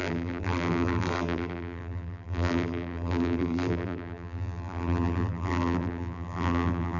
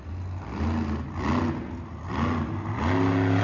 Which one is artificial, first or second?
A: first